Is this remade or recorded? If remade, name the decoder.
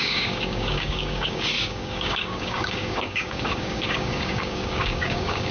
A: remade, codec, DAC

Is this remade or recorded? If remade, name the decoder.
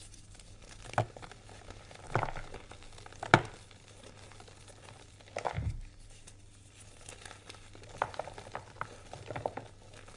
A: recorded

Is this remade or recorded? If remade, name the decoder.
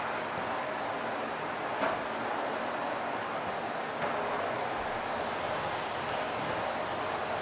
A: recorded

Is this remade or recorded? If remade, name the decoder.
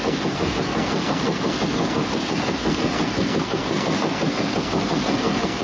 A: remade, codec, SNAC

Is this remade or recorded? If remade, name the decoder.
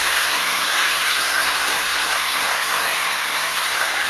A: remade, codec, SNAC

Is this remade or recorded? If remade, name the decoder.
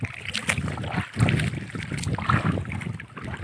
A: recorded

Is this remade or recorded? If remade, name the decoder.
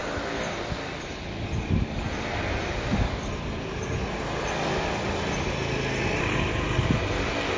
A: recorded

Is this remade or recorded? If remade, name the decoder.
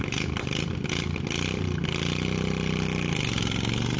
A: recorded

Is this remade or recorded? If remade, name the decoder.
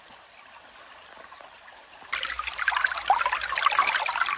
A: recorded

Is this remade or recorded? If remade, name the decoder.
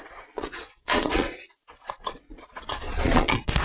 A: remade, vocoder, Vocos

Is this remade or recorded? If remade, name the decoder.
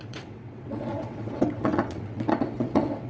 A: remade, vocoder, WaveNeXt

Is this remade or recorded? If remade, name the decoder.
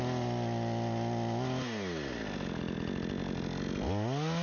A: recorded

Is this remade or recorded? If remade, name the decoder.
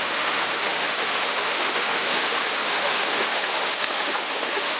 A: remade, autoencoder, DAC-VAE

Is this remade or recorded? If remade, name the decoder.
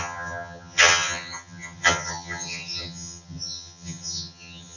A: remade, vocoder, HiFi-GAN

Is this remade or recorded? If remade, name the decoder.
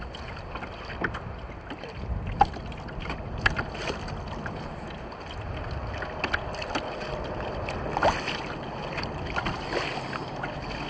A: recorded